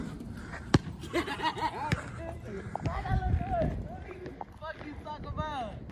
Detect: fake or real real